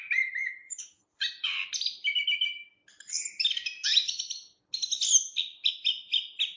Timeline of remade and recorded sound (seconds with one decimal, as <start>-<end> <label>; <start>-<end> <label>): 0.0-0.4 recorded; 0.4-1.0 remade; 1.0-6.6 recorded